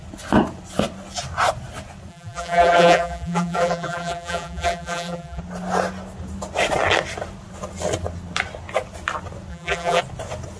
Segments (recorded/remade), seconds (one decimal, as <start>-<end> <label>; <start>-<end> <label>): 0.0-2.1 recorded; 2.1-5.4 remade; 5.4-9.5 recorded; 9.5-10.0 remade; 10.0-10.6 recorded